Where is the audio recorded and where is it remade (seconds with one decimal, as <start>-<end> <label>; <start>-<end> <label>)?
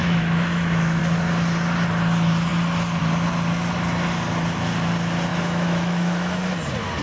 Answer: 0.0-1.0 remade; 1.0-5.3 recorded; 5.3-6.4 remade; 6.4-7.0 recorded